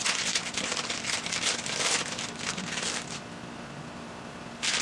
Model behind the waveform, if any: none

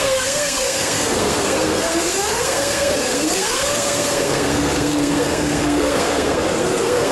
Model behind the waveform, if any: codec, SNAC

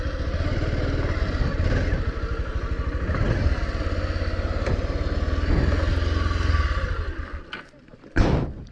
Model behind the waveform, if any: none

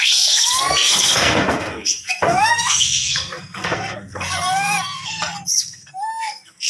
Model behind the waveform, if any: codec, SNAC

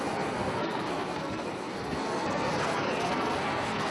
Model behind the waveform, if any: codec, SNAC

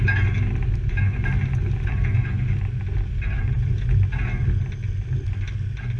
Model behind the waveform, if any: none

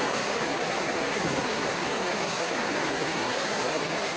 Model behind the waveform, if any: codec, SNAC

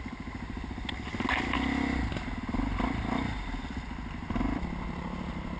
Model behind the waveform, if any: none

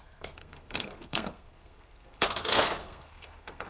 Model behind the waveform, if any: codec, SNAC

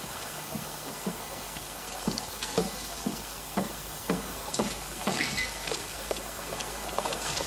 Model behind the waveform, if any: codec, SNAC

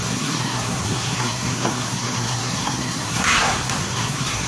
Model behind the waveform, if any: codec, SNAC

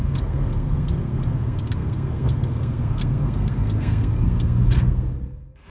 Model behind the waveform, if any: codec, SNAC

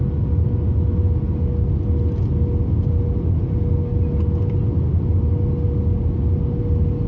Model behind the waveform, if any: none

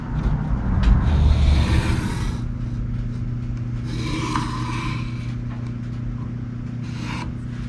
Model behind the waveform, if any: none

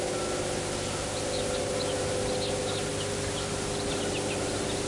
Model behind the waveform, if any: none